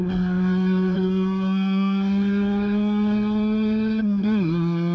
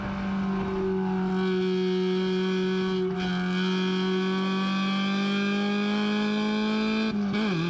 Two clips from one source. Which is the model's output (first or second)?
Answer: first